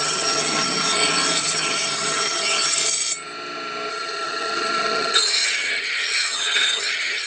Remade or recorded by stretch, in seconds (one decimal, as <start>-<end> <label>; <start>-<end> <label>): 0.0-0.9 remade; 0.9-1.4 recorded; 1.4-2.8 remade; 2.8-3.9 recorded; 3.9-7.3 remade